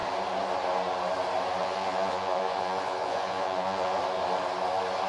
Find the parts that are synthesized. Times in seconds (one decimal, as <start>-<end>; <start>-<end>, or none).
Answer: 1.6-4.0